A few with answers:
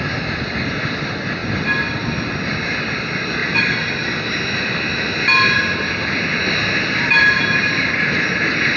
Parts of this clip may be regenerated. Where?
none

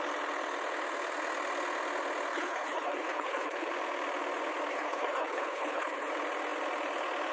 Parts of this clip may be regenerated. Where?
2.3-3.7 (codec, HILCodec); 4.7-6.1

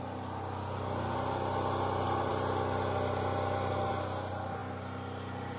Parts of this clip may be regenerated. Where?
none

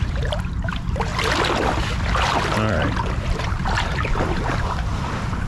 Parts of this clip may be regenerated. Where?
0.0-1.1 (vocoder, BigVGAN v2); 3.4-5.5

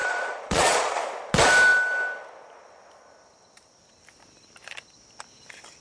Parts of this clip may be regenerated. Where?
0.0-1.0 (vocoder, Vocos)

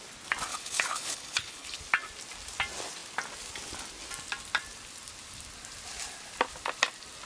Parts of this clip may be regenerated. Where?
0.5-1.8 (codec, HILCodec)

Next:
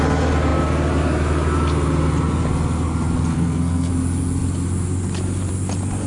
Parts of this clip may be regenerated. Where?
3.3-3.9 (codec, SNAC)

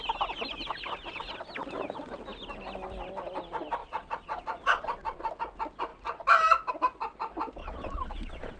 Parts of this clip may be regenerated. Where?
3.8-5.3 (vocoder, Vocos); 7.6-8.6